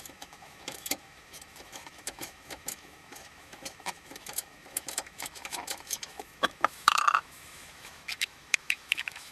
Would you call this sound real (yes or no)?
no